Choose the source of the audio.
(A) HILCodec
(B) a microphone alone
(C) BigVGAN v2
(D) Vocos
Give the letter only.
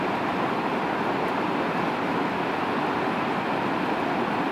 B